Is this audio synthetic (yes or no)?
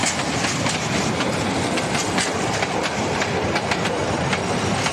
no